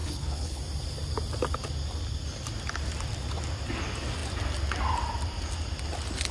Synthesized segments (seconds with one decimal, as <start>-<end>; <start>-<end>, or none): 0.0-0.6